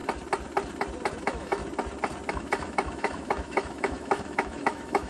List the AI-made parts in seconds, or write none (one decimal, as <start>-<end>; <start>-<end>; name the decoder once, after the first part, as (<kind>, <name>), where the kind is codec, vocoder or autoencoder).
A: 1.2-1.6 (autoencoder, DAC-VAE); 2.3-5.1